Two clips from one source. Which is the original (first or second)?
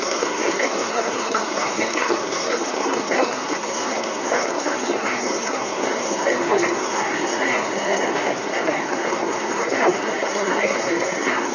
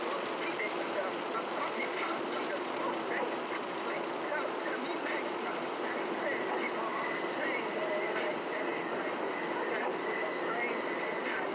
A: second